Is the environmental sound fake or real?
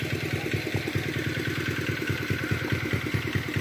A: real